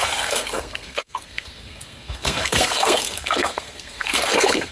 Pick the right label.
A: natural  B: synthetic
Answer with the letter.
B